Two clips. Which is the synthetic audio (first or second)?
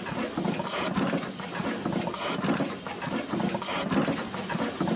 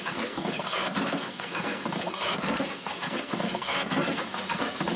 second